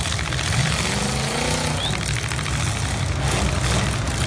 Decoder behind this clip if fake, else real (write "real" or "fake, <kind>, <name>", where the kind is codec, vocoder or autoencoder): real